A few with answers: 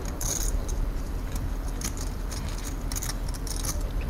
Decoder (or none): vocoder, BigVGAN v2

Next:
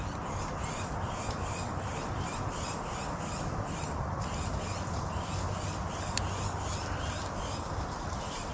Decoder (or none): none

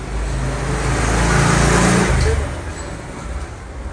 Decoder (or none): none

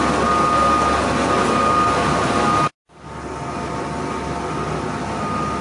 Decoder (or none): none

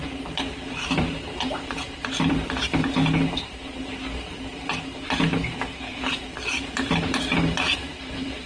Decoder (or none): vocoder, BigVGAN v2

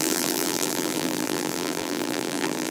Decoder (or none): vocoder, BigVGAN v2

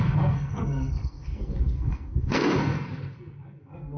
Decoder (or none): codec, SNAC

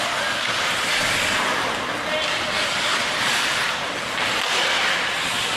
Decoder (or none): none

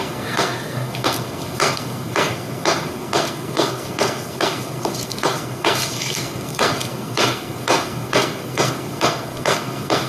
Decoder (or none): codec, SNAC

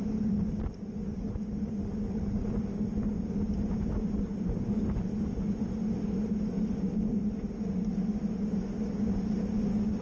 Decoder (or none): none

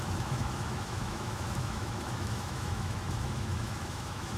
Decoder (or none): autoencoder, DAC-VAE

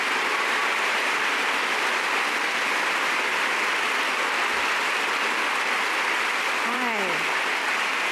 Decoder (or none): vocoder, BigVGAN v2